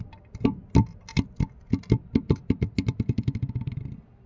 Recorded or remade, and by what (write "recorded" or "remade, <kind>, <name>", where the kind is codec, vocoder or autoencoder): recorded